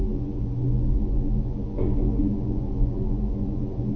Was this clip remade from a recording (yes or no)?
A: yes